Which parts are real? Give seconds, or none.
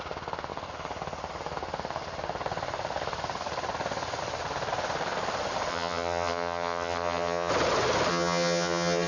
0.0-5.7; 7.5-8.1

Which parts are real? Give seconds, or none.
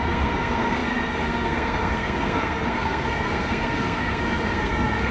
none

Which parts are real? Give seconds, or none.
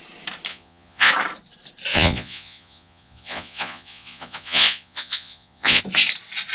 0.0-0.5; 1.1-1.9; 5.8-6.5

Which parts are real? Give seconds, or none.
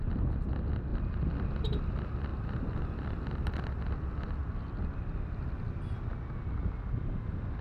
0.0-2.3; 3.2-4.4; 6.1-7.6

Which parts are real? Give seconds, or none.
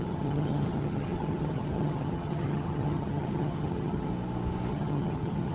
4.1-4.7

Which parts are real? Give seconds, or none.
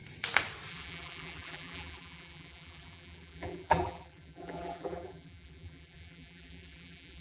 0.0-0.7